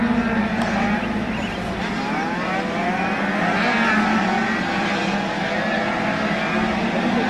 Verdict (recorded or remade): recorded